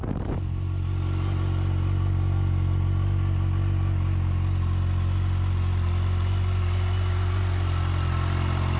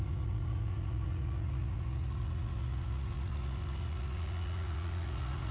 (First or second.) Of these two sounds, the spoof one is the second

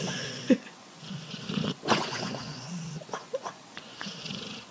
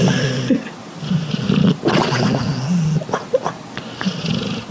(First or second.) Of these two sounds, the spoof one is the first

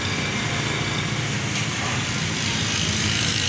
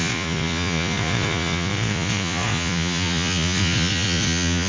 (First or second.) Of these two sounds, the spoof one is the second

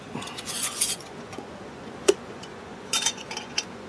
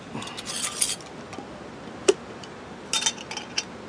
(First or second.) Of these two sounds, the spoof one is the first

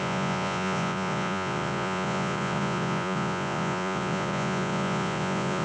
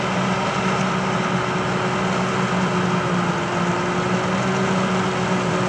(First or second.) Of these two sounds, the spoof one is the first